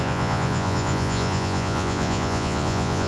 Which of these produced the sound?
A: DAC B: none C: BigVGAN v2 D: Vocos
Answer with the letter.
D